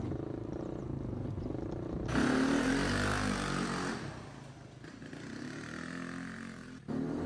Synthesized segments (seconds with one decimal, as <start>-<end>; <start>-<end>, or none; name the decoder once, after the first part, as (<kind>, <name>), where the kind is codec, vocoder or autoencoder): none